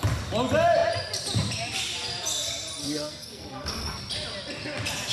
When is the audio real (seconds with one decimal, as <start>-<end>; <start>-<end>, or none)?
0.0-2.8; 4.1-5.1